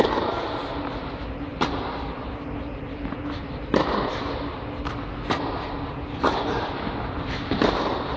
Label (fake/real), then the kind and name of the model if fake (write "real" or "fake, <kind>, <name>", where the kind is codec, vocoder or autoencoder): real